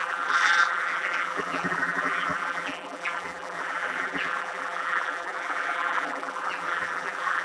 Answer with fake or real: fake